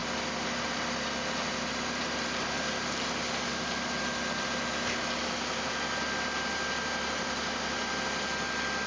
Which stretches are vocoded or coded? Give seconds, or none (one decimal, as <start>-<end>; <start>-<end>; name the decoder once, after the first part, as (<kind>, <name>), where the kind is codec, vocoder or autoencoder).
none

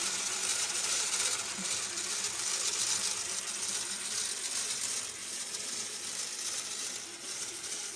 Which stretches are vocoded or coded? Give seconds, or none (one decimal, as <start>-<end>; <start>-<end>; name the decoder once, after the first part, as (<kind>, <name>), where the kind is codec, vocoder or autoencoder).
0.5-1.1 (vocoder, Vocos); 5.2-6.0; 7.1-8.0

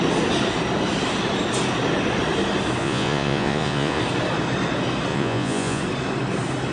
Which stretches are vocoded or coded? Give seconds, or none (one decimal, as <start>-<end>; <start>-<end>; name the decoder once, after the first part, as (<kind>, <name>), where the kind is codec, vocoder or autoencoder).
2.8-4.0 (vocoder, Vocos); 5.1-5.8

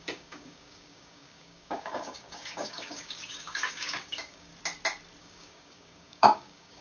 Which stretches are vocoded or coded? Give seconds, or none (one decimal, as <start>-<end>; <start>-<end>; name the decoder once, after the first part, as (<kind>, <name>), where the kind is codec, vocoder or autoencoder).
0.0-4.5 (codec, DAC); 5.2-6.8

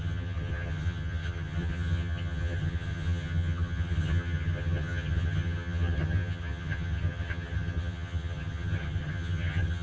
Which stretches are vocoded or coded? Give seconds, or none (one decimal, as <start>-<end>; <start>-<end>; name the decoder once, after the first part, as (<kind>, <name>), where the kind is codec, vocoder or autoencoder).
0.0-9.8 (vocoder, HiFi-GAN)